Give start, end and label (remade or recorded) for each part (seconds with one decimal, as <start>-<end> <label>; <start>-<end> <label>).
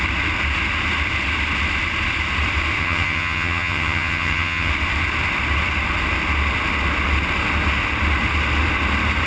0.0-2.8 recorded; 2.8-4.7 remade; 4.7-9.3 recorded